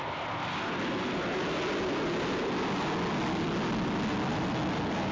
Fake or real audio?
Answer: real